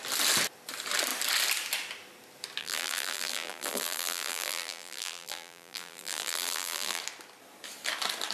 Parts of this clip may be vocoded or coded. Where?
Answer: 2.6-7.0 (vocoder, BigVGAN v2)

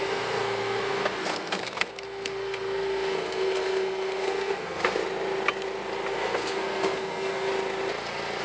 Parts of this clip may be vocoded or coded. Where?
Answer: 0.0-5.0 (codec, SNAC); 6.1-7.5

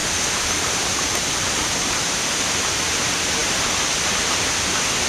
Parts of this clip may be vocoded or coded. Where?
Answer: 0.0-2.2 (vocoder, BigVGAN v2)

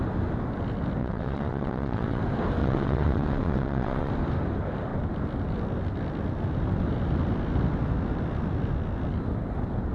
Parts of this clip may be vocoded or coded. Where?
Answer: 1.0-2.2 (vocoder, WaveNeXt); 2.6-4.1

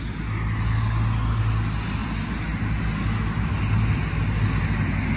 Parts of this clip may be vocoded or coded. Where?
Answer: none